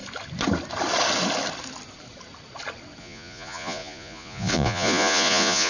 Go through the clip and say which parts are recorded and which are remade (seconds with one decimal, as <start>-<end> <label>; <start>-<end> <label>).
0.0-3.0 recorded; 3.0-5.7 remade